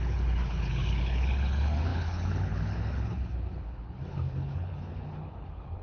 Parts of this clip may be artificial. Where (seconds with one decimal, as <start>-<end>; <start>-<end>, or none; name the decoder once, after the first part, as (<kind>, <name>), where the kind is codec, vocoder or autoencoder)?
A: 0.0-5.8 (codec, HILCodec)